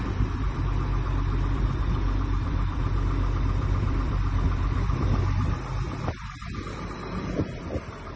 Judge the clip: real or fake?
fake